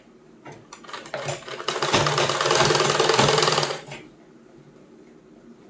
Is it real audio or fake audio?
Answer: real